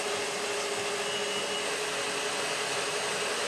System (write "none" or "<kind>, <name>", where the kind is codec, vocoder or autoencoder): none